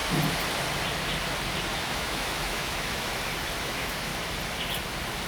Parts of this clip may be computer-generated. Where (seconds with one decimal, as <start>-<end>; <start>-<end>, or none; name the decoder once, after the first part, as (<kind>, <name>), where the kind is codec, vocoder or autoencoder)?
1.8-3.1 (autoencoder, DAC-VAE); 3.6-4.1